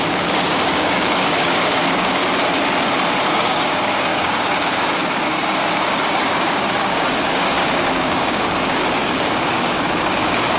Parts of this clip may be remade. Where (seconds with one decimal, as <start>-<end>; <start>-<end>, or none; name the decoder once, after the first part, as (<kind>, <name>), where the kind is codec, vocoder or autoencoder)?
0.0-2.2 (codec, DAC); 3.3-10.6